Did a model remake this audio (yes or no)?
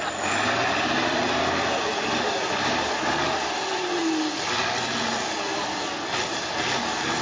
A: no